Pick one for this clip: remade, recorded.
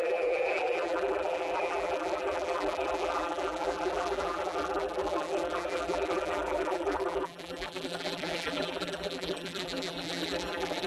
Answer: remade